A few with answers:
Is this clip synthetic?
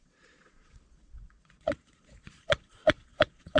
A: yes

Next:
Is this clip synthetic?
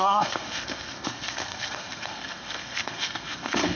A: yes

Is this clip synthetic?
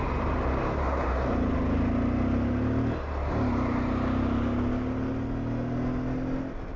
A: no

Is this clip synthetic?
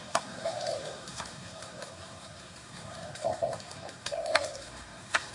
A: yes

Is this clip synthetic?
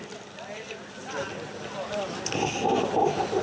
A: no